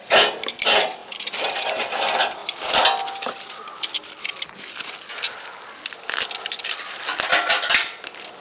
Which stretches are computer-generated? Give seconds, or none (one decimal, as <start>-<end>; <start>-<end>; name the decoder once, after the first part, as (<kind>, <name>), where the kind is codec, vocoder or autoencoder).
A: none